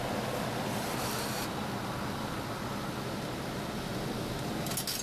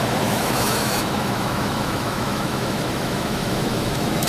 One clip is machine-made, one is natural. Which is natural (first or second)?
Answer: first